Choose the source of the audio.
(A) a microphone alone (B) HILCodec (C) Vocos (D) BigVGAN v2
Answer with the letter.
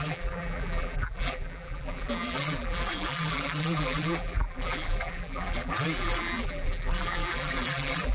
D